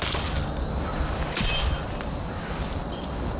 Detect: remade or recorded recorded